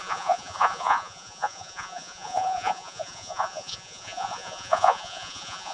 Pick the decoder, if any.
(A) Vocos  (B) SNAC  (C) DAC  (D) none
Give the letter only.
A